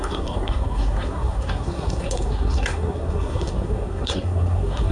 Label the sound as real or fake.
fake